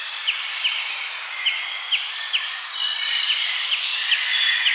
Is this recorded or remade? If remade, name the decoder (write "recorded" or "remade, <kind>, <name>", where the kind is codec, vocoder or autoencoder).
remade, vocoder, BigVGAN v2